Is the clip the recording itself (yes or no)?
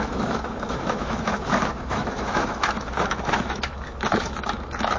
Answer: no